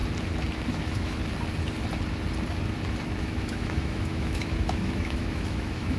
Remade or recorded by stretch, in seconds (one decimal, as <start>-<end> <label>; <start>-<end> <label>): 0.0-0.7 recorded; 0.7-1.2 remade; 1.2-3.2 recorded; 3.2-6.0 remade

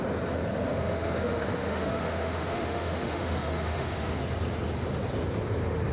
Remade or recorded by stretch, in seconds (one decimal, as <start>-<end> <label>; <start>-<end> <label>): 0.0-0.7 recorded; 0.7-4.2 remade; 4.2-5.9 recorded

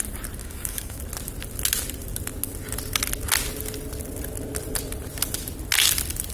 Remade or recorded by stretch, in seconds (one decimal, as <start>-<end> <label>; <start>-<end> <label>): 0.0-0.4 recorded; 0.4-1.0 remade; 1.0-6.3 recorded

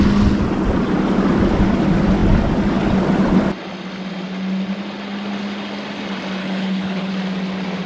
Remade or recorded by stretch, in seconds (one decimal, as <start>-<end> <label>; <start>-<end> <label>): 0.0-6.4 recorded; 6.4-7.1 remade; 7.1-7.9 recorded

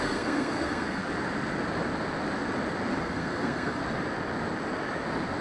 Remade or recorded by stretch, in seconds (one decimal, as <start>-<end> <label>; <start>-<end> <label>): 0.0-1.0 remade; 1.0-3.0 recorded; 3.0-3.8 remade; 3.8-5.4 recorded